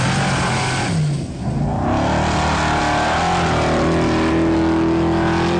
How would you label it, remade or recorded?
recorded